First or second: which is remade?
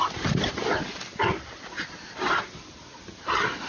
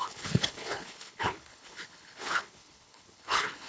second